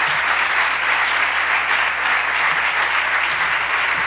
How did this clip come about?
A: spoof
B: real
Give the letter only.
B